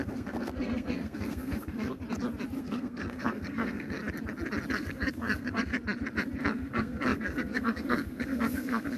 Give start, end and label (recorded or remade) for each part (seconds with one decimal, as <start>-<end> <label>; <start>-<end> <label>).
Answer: 0.0-2.0 remade; 2.0-2.6 recorded; 2.6-4.0 remade; 4.0-4.7 recorded; 4.7-5.7 remade; 5.7-6.4 recorded; 6.4-9.0 remade